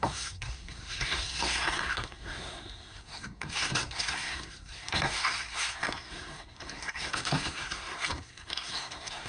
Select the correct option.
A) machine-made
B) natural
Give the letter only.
A